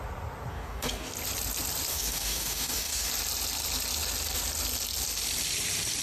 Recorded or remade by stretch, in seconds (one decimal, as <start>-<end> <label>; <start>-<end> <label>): 0.0-0.5 recorded; 0.5-1.1 remade; 1.1-1.9 recorded; 1.9-3.1 remade; 3.1-6.0 recorded